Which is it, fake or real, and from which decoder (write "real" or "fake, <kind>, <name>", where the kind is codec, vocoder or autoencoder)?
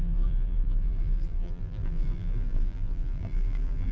fake, vocoder, BigVGAN v2